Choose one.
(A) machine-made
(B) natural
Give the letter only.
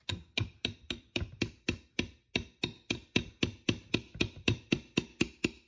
B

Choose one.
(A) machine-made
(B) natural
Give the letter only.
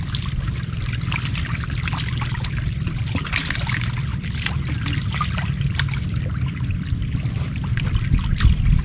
B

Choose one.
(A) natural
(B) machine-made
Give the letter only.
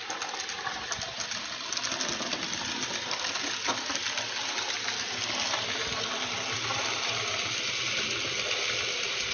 A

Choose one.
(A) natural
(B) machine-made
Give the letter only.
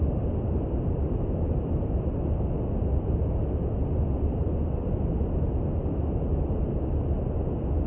A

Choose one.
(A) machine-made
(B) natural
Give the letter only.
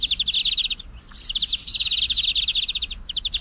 B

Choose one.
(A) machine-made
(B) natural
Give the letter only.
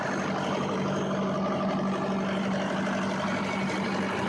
B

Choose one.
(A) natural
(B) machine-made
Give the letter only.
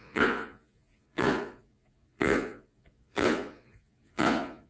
B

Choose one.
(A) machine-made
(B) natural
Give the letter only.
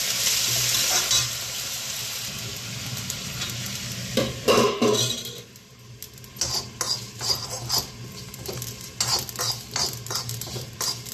B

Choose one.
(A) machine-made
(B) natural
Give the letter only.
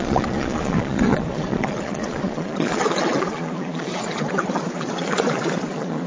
A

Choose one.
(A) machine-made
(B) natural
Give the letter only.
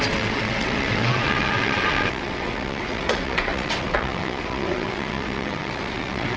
A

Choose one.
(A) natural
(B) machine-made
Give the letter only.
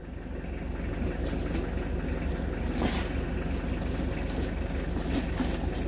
A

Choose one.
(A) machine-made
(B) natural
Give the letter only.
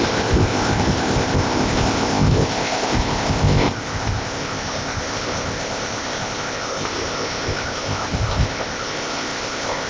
A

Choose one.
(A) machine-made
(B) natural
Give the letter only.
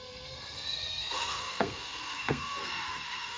A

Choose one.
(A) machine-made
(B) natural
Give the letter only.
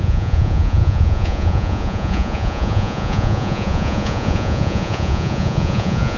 A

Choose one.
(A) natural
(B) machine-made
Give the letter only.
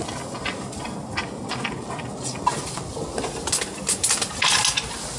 A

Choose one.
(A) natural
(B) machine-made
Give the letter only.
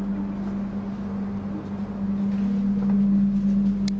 A